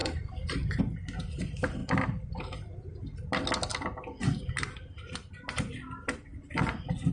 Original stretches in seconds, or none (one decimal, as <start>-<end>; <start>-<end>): 0.8-1.8; 3.0-7.1